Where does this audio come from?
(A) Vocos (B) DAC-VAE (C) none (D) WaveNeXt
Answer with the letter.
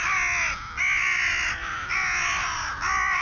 C